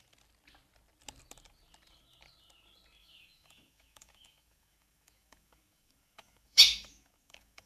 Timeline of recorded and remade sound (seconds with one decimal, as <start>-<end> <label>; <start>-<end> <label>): 0.0-3.0 recorded; 3.0-7.7 remade